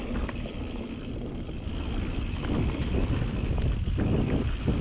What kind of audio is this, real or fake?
real